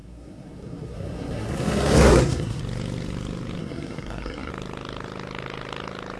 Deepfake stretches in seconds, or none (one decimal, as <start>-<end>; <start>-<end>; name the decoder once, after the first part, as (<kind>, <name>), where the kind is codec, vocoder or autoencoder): 0.0-2.6 (codec, SNAC); 3.6-4.5

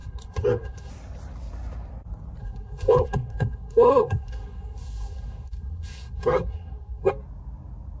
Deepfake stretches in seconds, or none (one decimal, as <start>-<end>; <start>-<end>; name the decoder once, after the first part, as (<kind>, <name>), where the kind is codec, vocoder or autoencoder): 0.0-0.9 (codec, SNAC); 2.4-7.1

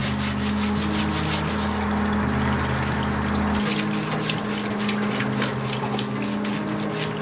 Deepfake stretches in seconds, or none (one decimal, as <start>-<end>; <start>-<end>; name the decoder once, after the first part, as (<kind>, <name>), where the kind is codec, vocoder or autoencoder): none

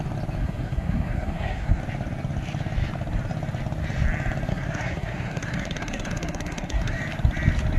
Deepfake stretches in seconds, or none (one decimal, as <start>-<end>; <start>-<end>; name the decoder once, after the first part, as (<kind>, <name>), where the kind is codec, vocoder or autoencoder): 0.4-1.8 (codec, SNAC); 4.5-7.0

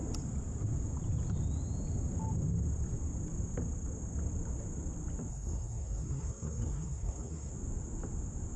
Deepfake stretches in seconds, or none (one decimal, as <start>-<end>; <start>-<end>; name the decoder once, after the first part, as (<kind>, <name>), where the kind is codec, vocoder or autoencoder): 5.3-7.5 (codec, SNAC)